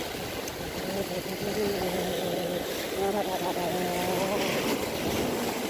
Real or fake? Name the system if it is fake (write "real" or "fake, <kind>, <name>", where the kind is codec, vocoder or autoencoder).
real